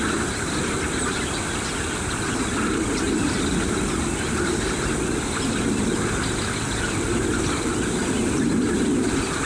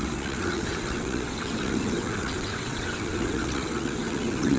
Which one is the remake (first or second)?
second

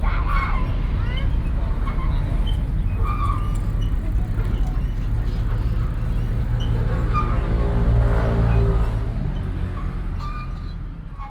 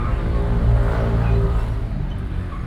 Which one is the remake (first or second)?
second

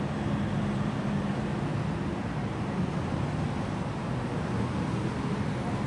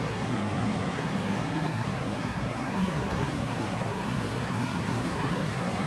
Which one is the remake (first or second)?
second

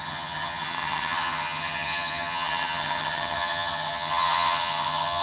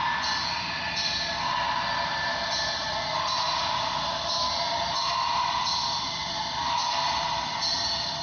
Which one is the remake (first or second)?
first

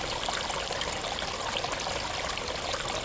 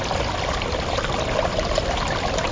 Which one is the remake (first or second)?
second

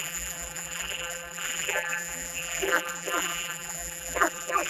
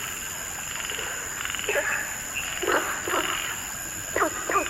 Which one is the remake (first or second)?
first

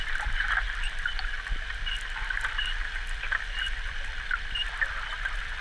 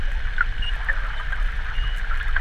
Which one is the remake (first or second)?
first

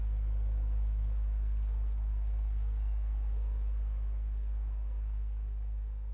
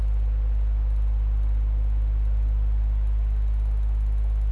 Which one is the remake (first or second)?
first